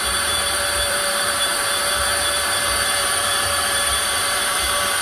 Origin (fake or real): fake